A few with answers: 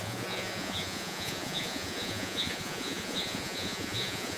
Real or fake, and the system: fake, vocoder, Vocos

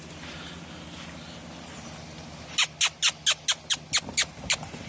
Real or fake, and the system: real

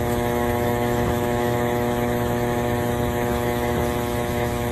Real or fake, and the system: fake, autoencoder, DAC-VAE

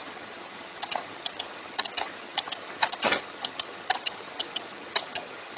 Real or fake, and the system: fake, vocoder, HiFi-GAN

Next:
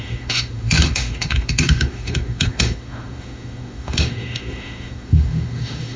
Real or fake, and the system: fake, autoencoder, DAC-VAE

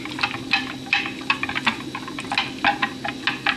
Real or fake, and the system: real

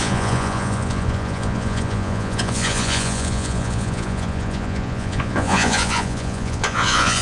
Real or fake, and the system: fake, vocoder, Vocos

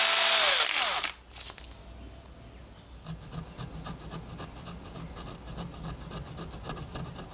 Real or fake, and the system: real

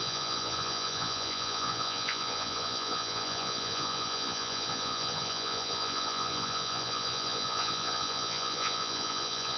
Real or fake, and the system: fake, vocoder, Vocos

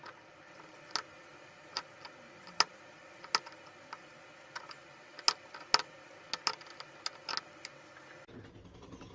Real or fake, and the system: real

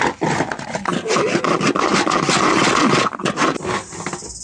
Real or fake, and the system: real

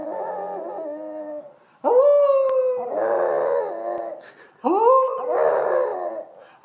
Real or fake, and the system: real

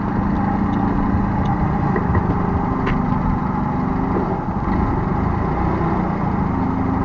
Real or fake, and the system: real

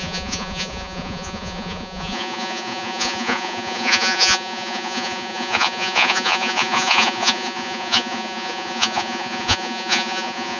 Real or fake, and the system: fake, vocoder, Vocos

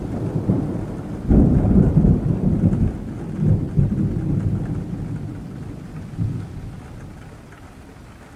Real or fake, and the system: real